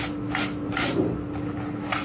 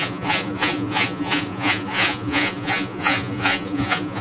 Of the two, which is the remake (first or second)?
second